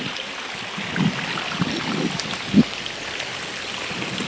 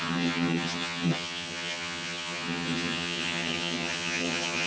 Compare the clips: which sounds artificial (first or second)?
second